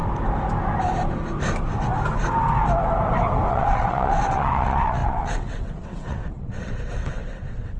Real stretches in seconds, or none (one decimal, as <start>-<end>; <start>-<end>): 0.0-3.5